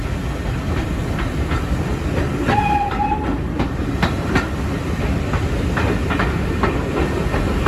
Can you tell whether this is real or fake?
real